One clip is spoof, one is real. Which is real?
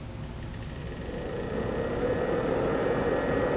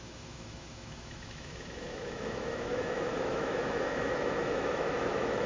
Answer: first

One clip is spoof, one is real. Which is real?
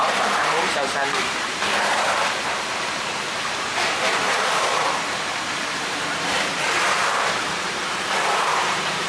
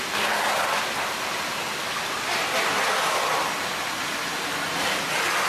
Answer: second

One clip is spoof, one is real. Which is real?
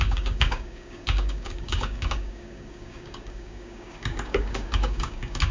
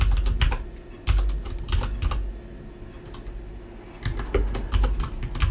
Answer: second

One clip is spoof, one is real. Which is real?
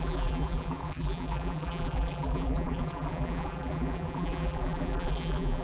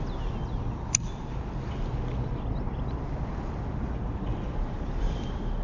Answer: second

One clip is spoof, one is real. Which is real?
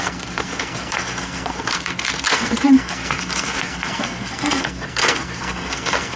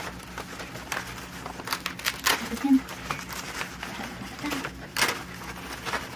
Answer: second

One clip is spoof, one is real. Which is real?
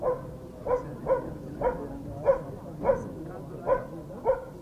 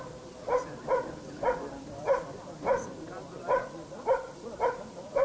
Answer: first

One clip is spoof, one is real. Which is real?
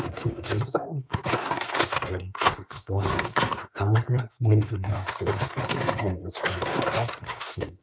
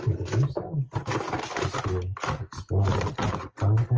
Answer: second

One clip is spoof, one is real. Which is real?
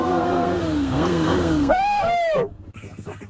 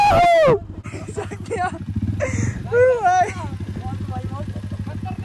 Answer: second